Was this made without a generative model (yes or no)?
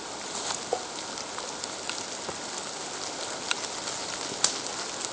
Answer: yes